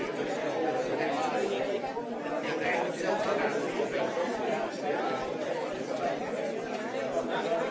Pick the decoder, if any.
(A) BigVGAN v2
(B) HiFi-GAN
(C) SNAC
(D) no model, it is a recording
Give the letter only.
A